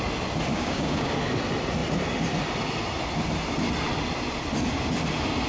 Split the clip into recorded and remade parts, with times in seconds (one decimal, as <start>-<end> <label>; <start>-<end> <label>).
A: 0.0-0.5 recorded; 0.5-1.1 remade; 1.1-5.5 recorded